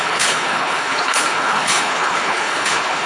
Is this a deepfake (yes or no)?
yes